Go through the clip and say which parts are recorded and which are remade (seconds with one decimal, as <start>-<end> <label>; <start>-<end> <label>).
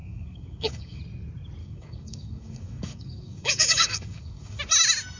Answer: 0.0-1.0 remade; 1.0-1.6 recorded; 1.6-4.6 remade; 4.6-5.2 recorded